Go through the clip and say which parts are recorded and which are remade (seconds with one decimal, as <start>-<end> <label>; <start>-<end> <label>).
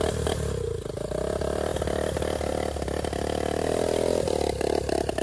0.0-5.2 remade